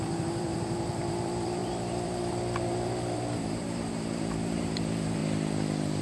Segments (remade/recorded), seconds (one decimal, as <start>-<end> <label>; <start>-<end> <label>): 0.0-5.2 remade; 5.2-6.0 recorded